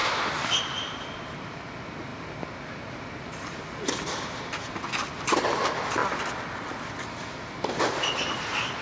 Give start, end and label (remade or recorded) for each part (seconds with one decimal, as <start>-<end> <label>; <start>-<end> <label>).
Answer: 0.0-8.8 recorded